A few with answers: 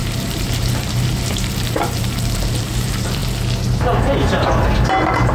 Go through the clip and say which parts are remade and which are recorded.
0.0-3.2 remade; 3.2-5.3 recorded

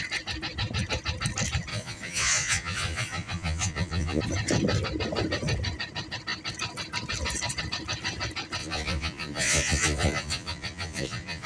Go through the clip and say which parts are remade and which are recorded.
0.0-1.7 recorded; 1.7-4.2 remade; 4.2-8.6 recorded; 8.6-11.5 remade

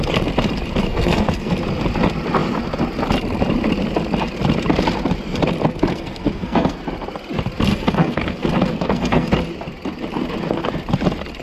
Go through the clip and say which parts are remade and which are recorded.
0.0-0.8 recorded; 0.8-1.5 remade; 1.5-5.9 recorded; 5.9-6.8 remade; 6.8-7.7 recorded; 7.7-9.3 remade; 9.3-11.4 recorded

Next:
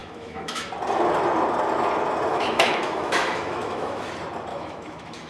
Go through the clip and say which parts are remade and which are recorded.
0.0-0.7 remade; 0.7-2.3 recorded; 2.3-4.1 remade; 4.1-4.5 recorded; 4.5-5.3 remade

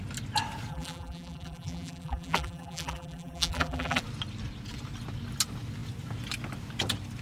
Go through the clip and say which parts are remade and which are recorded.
0.0-0.7 recorded; 0.7-4.0 remade; 4.0-7.2 recorded

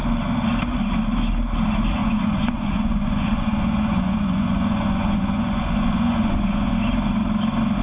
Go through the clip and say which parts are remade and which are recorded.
0.0-2.0 recorded; 2.0-6.7 remade; 6.7-7.8 recorded

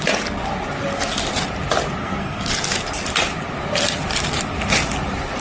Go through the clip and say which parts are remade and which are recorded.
0.0-2.0 recorded; 2.0-2.5 remade; 2.5-5.4 recorded